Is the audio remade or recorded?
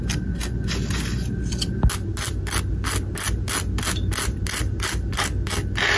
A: recorded